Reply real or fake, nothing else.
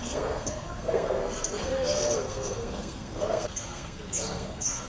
fake